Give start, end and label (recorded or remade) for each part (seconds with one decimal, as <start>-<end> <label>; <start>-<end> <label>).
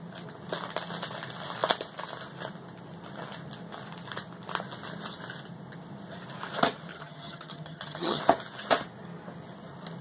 0.0-6.9 recorded; 6.9-8.2 remade; 8.2-10.0 recorded